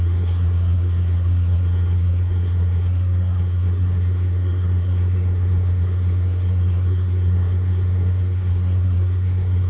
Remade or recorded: remade